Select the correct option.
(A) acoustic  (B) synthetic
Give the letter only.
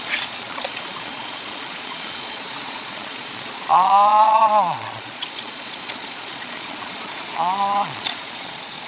B